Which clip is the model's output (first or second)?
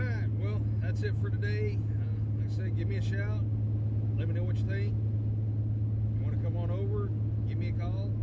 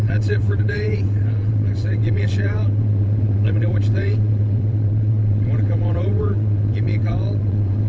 second